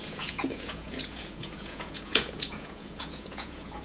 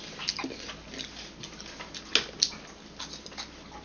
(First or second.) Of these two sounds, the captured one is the second